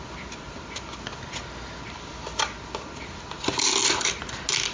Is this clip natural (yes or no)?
yes